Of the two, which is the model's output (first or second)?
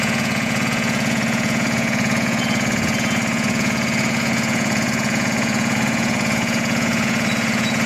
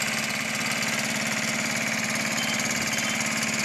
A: first